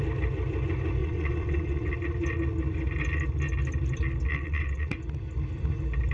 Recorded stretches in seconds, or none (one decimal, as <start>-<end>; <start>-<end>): 0.0-1.0; 1.9-4.3; 4.9-6.1